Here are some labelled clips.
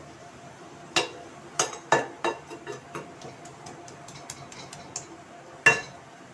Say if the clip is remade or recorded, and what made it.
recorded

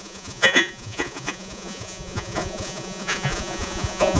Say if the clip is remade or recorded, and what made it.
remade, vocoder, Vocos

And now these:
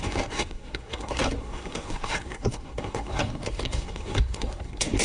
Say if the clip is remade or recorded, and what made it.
remade, codec, SNAC